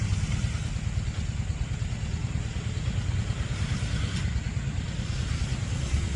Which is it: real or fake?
real